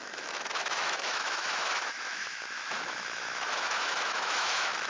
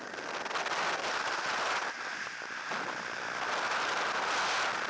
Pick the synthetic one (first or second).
first